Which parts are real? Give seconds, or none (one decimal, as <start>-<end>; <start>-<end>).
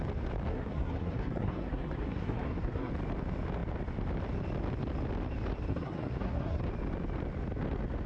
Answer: 0.0-0.5; 2.9-5.7; 6.6-8.1